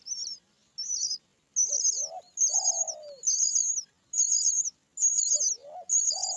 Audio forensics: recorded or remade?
recorded